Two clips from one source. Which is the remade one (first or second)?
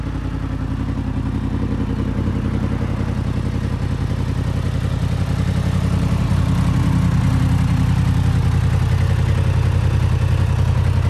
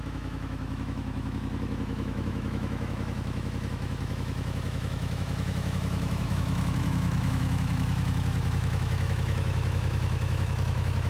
second